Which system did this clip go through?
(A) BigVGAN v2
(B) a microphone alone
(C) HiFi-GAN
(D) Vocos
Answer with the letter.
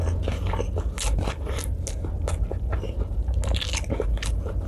B